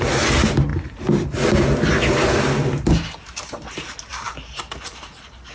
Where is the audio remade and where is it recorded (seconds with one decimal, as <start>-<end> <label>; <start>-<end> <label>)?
0.0-4.1 recorded; 4.1-4.7 remade; 4.7-5.5 recorded